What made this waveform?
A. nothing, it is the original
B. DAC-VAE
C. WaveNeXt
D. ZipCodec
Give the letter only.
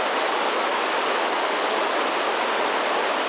A